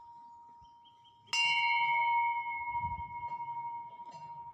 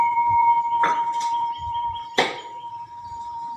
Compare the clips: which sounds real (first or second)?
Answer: first